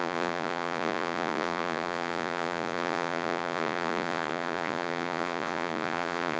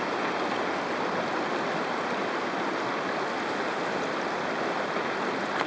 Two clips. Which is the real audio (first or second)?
second